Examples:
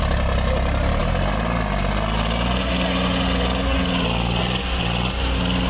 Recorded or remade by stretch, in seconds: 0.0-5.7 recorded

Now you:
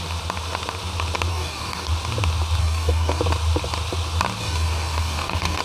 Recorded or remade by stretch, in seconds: 0.0-1.3 recorded; 1.3-1.9 remade; 1.9-2.6 recorded; 2.6-3.2 remade; 3.2-4.4 recorded; 4.4-5.6 remade

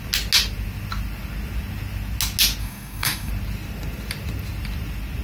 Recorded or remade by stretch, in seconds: 0.0-2.6 recorded; 2.6-3.3 remade; 3.3-5.2 recorded

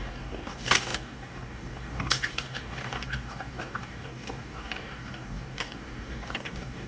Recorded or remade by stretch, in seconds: 0.0-6.9 remade

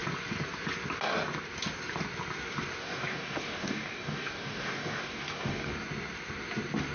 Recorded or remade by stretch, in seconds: 0.0-2.8 recorded; 2.8-5.7 remade; 5.7-6.9 recorded